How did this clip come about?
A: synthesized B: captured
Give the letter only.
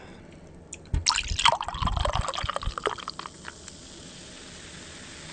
B